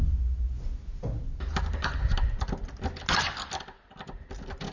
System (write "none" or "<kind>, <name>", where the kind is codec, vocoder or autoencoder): none